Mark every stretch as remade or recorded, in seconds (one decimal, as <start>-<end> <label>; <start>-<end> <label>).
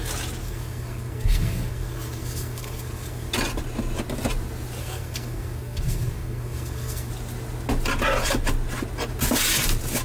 0.0-0.4 recorded; 0.4-3.3 remade; 3.3-4.8 recorded; 4.8-7.1 remade; 7.1-10.0 recorded